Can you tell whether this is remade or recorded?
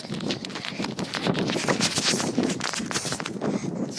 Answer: recorded